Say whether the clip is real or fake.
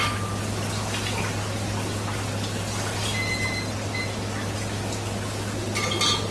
real